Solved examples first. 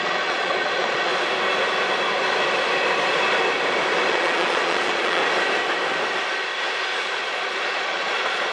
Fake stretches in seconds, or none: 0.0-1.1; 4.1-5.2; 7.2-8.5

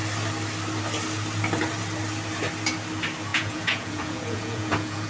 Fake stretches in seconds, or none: 3.3-5.1

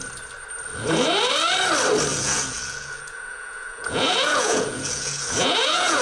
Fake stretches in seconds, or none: 2.1-6.0

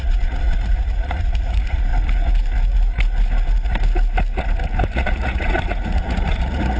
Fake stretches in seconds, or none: 0.0-1.9; 4.9-6.8

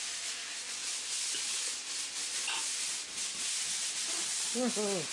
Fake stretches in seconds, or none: none